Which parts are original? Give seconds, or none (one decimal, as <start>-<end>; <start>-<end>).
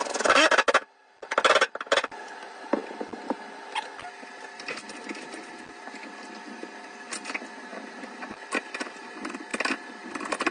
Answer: 0.0-7.7; 9.0-10.5